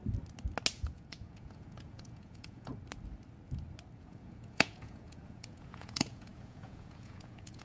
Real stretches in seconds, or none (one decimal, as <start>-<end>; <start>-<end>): 0.0-0.7; 2.7-4.0